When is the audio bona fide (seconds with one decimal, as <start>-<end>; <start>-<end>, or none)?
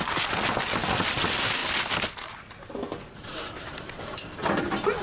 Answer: 0.0-5.0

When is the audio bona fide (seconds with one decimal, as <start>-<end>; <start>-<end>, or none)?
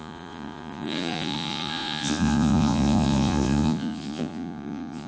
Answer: none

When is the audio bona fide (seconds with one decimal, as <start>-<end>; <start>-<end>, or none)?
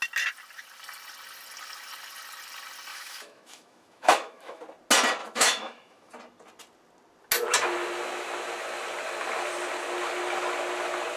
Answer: 0.0-2.9; 4.6-5.2; 6.1-11.2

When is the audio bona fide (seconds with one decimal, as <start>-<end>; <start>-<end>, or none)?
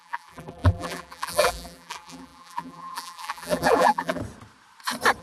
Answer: 4.2-5.2